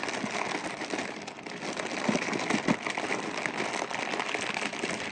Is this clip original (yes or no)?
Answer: yes